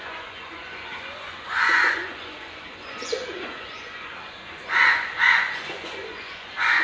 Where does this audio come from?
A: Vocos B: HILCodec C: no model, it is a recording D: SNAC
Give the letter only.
A